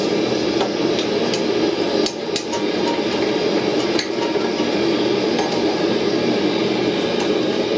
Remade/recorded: recorded